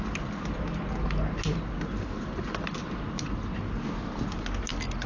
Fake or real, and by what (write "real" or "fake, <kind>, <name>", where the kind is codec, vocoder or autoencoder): real